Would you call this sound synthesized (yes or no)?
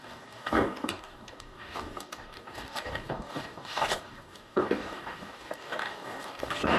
yes